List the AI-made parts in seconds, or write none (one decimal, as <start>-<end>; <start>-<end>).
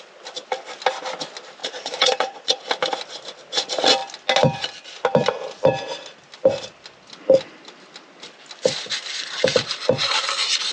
1.6-2.6